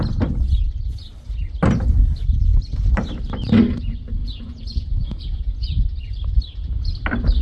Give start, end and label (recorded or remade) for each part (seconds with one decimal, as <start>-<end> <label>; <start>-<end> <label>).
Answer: 0.0-4.2 recorded; 4.2-5.8 remade; 5.8-7.4 recorded